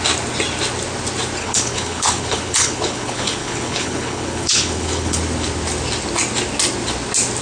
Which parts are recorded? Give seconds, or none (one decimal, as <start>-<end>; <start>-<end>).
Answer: 0.0-1.4; 5.2-7.4